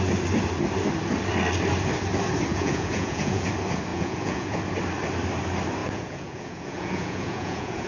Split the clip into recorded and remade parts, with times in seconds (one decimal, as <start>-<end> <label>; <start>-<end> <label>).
0.0-2.5 recorded; 2.5-3.5 remade; 3.5-3.9 recorded; 3.9-4.6 remade; 4.6-5.8 recorded; 5.8-7.9 remade